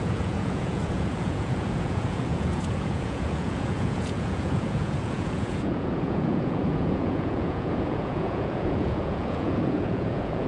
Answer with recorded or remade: remade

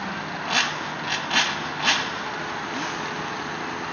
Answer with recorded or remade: recorded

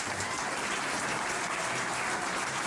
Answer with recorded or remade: remade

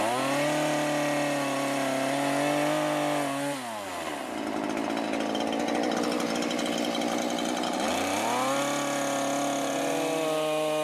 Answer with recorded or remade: recorded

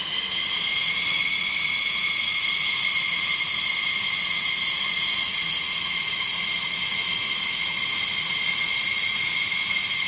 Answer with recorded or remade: remade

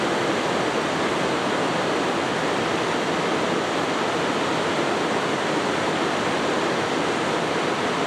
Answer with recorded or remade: recorded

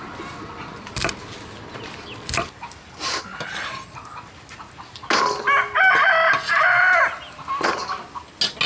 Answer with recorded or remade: recorded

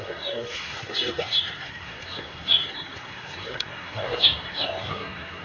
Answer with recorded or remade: remade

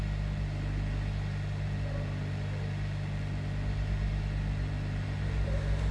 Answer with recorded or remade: recorded